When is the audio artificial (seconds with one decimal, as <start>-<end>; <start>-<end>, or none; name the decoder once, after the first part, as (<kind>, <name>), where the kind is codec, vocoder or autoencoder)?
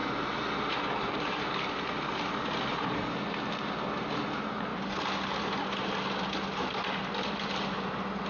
none